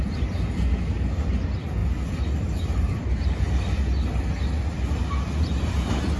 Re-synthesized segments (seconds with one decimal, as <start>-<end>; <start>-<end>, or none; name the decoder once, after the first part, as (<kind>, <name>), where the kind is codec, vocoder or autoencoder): none

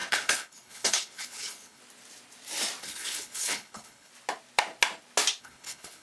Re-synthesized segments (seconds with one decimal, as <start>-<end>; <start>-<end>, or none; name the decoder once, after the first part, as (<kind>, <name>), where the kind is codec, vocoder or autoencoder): 0.0-1.8 (codec, HILCodec); 2.8-4.1; 5.4-6.0